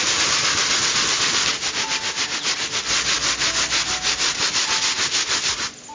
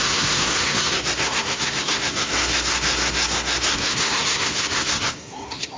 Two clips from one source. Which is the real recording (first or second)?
first